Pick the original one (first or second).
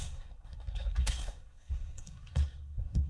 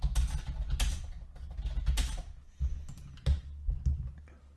second